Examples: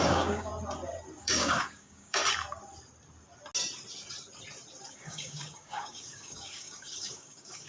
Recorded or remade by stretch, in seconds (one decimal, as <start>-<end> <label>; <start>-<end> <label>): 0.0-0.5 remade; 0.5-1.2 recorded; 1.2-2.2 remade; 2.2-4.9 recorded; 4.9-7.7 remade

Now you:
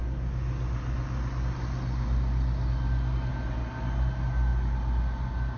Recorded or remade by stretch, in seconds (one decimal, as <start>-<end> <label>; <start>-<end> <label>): 0.0-5.6 recorded

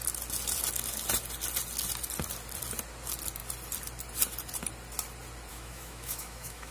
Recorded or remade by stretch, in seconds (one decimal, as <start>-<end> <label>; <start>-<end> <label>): 0.0-5.5 recorded; 5.5-6.7 remade